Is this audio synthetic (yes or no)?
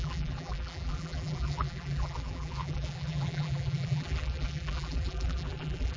yes